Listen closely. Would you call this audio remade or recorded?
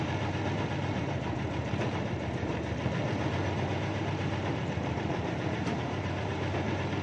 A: remade